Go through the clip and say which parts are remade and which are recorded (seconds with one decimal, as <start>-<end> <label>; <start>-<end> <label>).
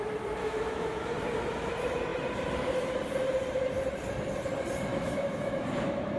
0.0-0.4 recorded; 0.4-1.7 remade; 1.7-4.9 recorded; 4.9-6.2 remade